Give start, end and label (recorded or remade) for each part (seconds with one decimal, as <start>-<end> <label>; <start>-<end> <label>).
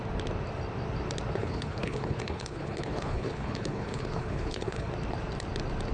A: 0.0-1.4 recorded; 1.4-4.9 remade; 4.9-5.9 recorded